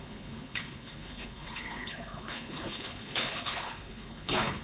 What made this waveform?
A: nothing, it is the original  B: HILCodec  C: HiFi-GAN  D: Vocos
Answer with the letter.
B